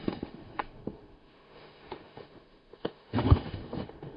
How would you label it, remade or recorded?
remade